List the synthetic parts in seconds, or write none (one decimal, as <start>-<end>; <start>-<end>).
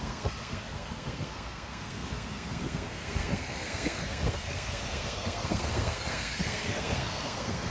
0.0-7.7